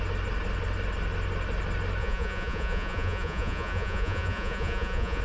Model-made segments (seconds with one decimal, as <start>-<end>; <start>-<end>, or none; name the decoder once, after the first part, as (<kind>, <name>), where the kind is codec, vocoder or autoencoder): 2.0-5.2 (vocoder, Vocos)